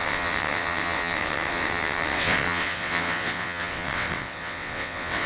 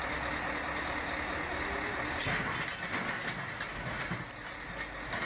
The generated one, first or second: first